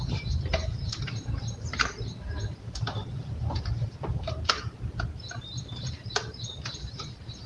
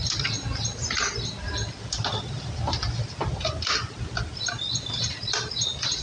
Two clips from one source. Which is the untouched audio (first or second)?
second